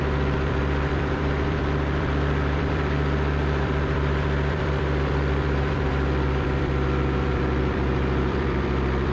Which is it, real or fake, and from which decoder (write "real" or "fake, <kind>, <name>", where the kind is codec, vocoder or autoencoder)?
fake, vocoder, BigVGAN v2